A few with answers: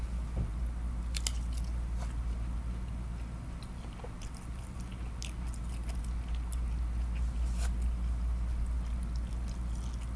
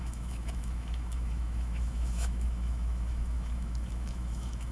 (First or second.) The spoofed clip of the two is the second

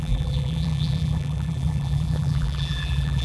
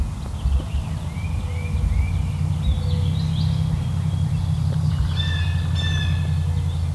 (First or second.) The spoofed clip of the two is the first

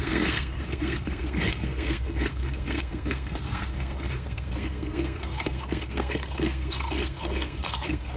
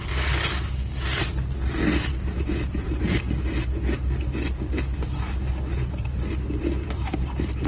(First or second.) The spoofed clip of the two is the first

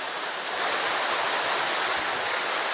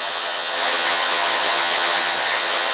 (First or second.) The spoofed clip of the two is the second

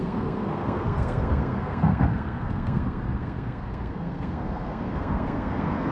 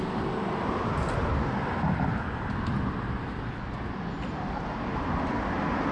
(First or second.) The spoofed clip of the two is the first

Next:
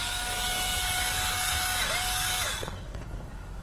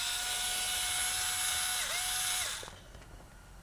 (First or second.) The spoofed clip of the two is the first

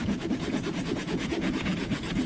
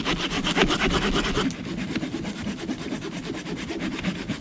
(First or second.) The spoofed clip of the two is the first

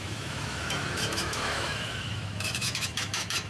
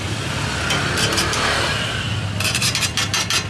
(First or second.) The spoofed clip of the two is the first